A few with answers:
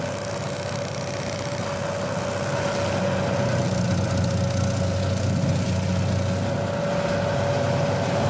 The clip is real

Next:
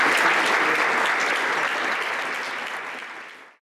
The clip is real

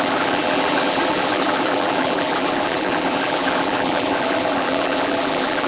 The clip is fake